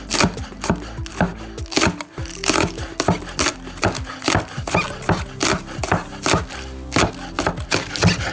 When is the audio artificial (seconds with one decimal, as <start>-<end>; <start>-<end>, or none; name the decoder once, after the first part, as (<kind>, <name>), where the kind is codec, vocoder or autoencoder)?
none